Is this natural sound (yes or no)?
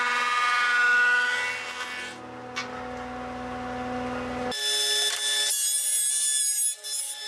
yes